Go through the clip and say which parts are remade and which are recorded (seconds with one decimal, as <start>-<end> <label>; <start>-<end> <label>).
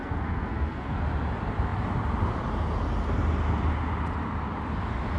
0.0-1.0 remade; 1.0-5.2 recorded